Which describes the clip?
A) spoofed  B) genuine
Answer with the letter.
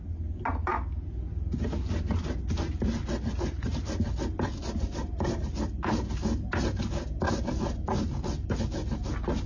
B